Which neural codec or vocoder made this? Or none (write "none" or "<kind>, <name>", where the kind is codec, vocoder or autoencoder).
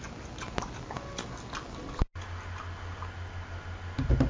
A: none